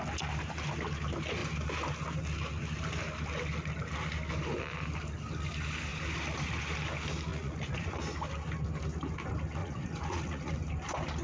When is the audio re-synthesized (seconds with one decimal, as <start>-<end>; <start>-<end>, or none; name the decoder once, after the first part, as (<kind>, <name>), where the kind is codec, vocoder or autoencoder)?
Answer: 7.3-8.0 (vocoder, Vocos); 9.6-10.5